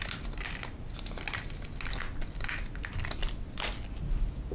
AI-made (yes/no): no